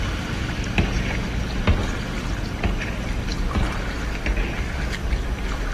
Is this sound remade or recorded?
recorded